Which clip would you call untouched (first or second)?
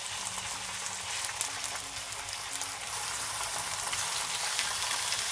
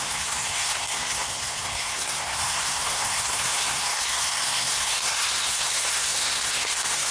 first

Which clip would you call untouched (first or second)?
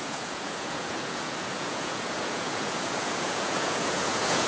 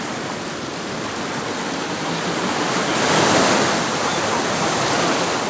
second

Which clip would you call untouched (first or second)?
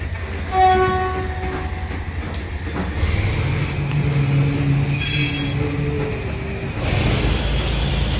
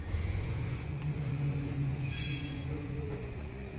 first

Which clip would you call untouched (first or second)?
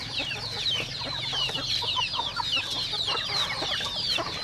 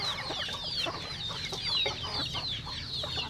second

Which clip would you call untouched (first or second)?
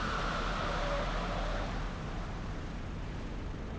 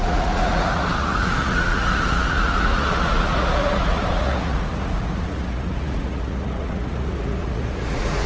first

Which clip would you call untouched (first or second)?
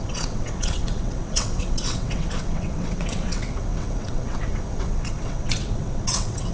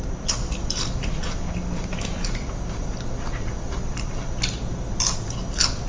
second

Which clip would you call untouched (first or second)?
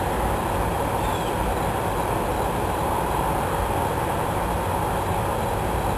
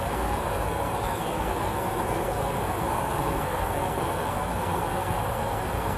first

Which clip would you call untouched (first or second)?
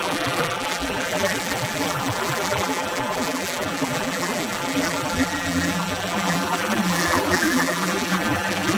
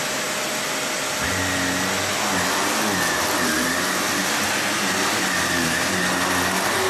second